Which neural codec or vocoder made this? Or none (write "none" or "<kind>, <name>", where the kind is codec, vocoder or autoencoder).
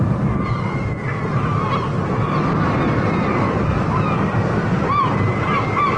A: none